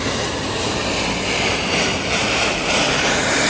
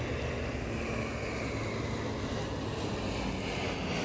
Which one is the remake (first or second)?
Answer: first